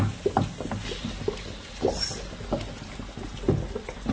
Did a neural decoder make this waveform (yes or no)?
no